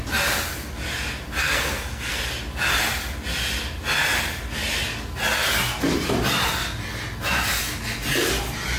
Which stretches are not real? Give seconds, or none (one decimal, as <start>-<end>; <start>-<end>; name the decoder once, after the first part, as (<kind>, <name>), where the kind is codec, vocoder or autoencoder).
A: 1.4-2.2 (codec, SNAC)